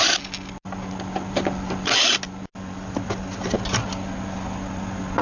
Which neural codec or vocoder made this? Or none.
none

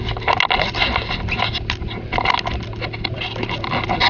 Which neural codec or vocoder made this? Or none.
none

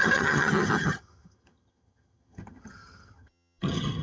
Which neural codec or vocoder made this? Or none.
vocoder, HiFi-GAN